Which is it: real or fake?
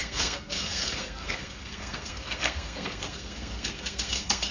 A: fake